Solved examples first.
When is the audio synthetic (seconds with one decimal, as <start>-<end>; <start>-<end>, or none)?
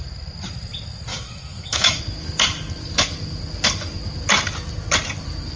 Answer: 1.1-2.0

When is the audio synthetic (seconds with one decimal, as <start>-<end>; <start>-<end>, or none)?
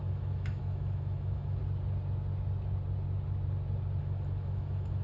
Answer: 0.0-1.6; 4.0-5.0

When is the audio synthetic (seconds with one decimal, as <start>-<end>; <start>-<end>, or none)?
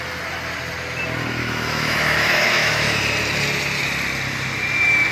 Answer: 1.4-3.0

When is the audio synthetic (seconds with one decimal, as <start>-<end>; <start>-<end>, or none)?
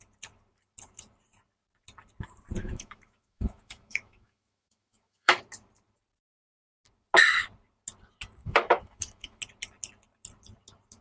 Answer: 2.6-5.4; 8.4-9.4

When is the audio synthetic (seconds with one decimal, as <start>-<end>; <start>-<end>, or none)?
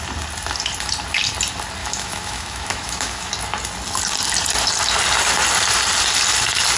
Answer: 1.8-3.3